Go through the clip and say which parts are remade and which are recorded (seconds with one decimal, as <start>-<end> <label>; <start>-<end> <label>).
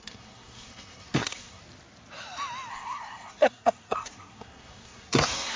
0.0-1.6 remade; 1.6-2.7 recorded; 2.7-5.6 remade